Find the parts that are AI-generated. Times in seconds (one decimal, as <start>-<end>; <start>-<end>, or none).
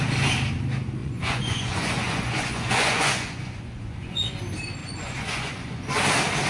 1.0-4.3; 4.8-5.8